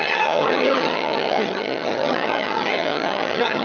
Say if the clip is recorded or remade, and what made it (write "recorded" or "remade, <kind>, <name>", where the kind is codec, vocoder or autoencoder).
remade, vocoder, HiFi-GAN